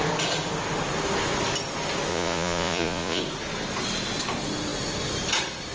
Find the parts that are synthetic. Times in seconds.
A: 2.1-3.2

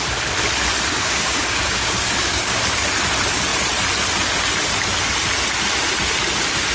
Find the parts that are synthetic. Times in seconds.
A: 0.9-2.6

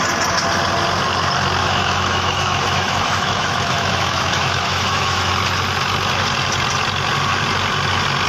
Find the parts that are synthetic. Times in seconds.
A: 1.6-5.3